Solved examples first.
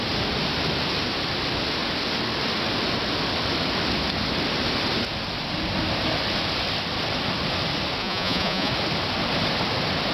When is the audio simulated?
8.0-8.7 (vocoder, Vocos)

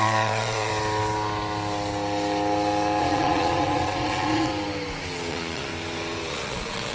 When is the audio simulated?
0.0-0.7 (vocoder, Vocos); 3.0-4.5; 5.3-5.7; 6.3-6.9

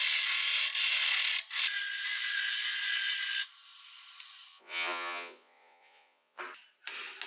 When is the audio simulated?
4.5-6.4 (vocoder, Vocos)

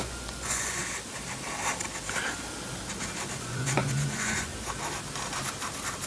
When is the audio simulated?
0.0-0.8 (vocoder, Vocos); 3.4-4.5

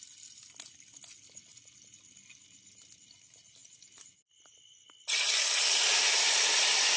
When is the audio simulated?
none

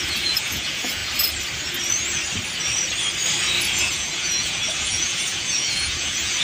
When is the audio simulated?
0.0-1.0 (vocoder, Vocos); 3.8-6.4